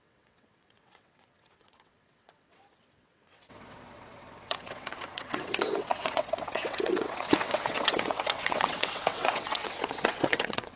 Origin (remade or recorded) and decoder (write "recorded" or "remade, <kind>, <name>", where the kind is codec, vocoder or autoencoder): remade, vocoder, WaveNeXt